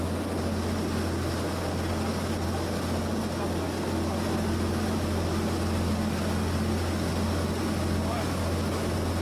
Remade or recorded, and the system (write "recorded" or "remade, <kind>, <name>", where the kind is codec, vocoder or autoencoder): recorded